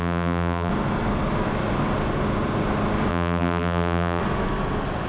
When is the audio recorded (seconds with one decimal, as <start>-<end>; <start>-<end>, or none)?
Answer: 0.7-3.1; 4.2-5.1